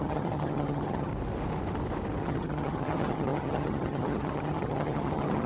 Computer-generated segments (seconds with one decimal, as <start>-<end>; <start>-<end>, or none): 0.0-1.1; 2.2-5.5

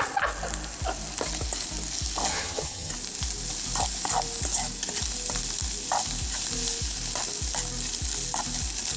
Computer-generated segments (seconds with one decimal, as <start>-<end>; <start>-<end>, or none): 2.3-2.9

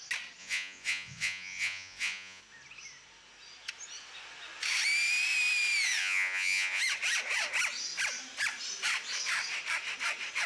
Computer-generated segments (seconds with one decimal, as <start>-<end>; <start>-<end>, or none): 0.4-2.4; 6.0-6.8

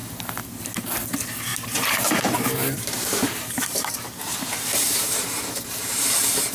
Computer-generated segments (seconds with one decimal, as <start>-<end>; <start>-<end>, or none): 1.5-5.3

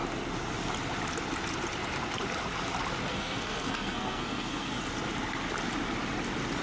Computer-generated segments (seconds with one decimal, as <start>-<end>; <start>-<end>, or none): 3.1-4.8